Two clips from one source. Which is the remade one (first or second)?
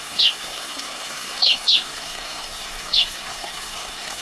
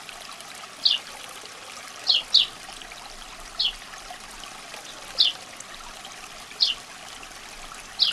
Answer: first